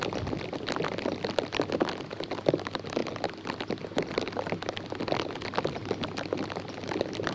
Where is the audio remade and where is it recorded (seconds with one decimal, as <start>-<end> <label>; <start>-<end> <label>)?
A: 0.0-7.3 recorded